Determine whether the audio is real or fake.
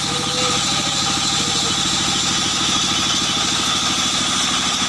real